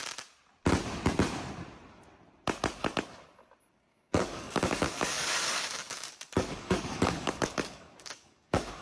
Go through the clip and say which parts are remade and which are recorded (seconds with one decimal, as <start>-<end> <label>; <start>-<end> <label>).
0.0-3.9 recorded; 3.9-8.8 remade